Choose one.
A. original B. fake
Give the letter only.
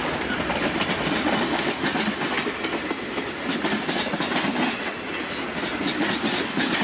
A